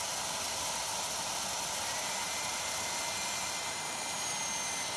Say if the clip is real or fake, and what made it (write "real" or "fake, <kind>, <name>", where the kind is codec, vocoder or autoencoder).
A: real